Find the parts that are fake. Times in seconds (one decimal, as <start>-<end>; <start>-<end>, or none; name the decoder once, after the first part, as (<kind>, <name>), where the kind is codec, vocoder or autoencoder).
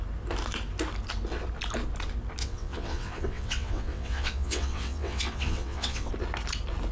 2.4-6.1 (vocoder, WaveNeXt)